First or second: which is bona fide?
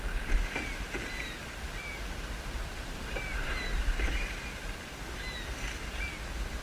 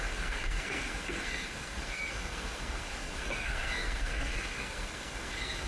first